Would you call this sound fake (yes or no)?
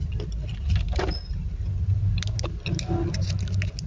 no